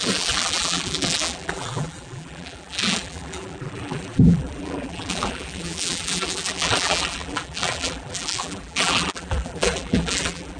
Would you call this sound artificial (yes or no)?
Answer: yes